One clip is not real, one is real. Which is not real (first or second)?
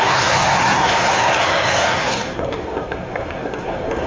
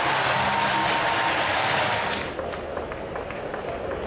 first